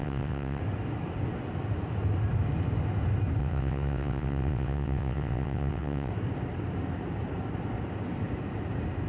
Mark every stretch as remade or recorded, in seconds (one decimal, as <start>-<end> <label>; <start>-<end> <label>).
0.0-0.6 remade; 0.6-3.4 recorded; 3.4-6.1 remade; 6.1-9.1 recorded